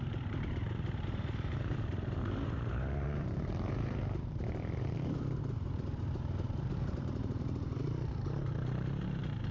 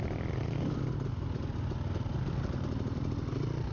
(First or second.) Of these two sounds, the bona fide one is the second